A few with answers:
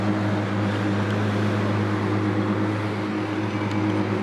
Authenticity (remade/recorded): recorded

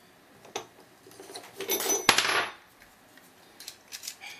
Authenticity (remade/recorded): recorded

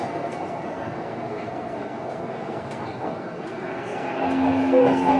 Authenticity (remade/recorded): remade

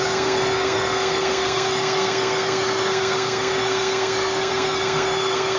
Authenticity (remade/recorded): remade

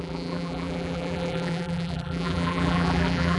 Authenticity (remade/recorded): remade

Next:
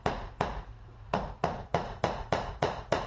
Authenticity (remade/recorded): remade